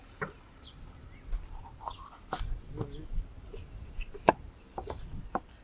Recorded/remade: recorded